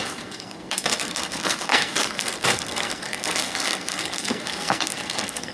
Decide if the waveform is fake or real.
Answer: fake